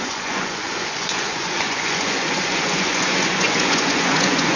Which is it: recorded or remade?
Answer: remade